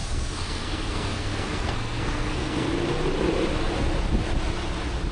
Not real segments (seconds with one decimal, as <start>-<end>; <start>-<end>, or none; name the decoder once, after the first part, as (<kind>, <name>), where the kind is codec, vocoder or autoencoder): 0.0-2.7 (codec, SNAC)